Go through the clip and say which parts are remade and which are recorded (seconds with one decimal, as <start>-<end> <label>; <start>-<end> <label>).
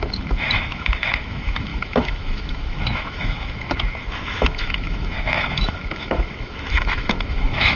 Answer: 0.0-7.8 remade